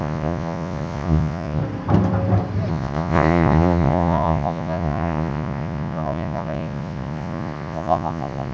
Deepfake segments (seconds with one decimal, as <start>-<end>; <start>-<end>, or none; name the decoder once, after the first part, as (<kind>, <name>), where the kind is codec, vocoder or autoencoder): 0.0-1.6 (vocoder, Vocos); 2.7-8.5